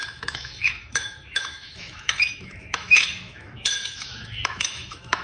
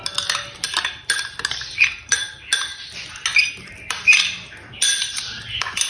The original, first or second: second